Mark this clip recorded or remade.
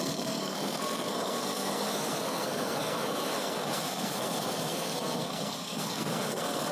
remade